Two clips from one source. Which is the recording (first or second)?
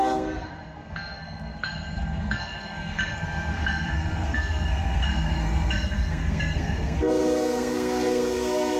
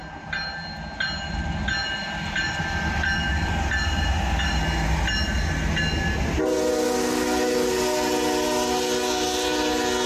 second